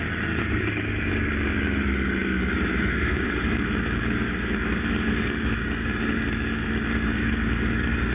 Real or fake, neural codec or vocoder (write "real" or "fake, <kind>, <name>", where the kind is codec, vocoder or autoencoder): fake, codec, DAC